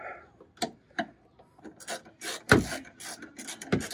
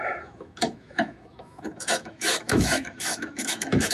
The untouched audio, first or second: first